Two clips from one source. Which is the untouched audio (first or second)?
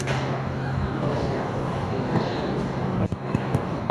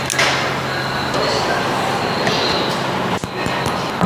second